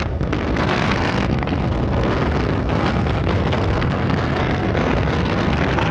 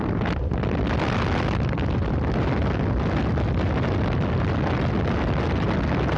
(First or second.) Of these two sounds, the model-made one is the first